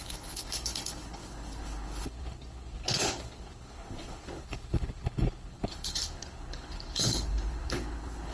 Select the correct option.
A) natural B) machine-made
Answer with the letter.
B